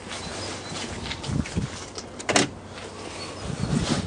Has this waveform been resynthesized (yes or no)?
no